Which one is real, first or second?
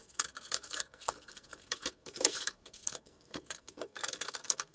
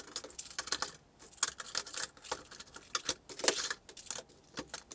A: second